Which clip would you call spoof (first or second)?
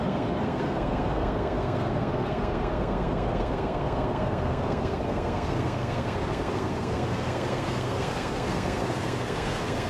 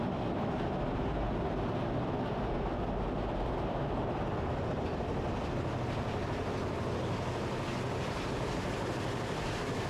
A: first